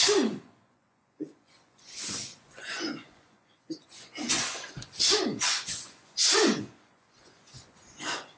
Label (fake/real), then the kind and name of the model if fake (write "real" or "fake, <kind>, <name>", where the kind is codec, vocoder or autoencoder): fake, vocoder, Vocos